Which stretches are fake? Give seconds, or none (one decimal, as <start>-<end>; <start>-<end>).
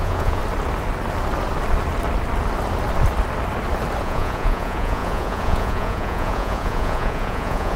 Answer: 0.0-0.4; 4.0-7.8